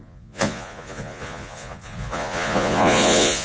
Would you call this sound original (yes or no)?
no